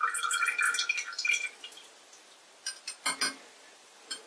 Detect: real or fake real